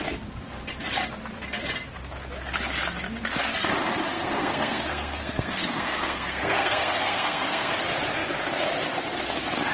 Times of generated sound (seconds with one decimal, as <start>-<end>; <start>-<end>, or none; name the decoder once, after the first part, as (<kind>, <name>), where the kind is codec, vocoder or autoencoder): 4.1-7.7 (codec, SNAC)